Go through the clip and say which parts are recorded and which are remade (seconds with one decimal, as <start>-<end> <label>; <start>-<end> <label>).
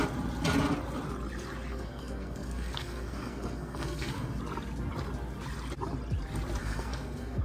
0.0-1.7 recorded; 1.7-4.4 remade; 4.4-6.6 recorded; 6.6-7.4 remade